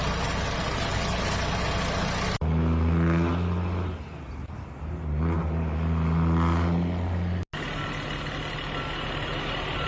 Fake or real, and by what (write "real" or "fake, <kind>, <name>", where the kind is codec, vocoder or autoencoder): real